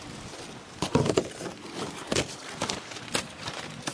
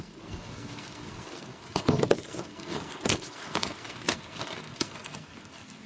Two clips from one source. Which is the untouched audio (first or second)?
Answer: first